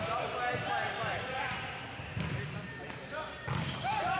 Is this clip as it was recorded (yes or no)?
yes